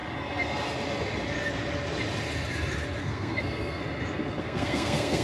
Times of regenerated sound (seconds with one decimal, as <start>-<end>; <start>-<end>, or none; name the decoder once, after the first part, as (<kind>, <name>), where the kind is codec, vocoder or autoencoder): 3.0-3.8 (codec, SNAC); 4.4-5.2